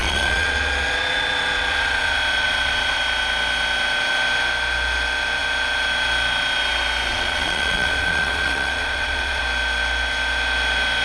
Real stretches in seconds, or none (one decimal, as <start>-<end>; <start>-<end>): 3.0-7.1; 9.4-11.0